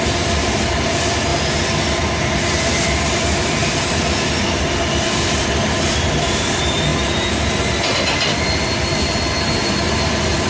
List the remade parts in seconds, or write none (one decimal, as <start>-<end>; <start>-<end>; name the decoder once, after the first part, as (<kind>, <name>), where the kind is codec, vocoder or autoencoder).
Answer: 0.0-1.3 (vocoder, BigVGAN v2); 2.6-6.9; 8.3-10.5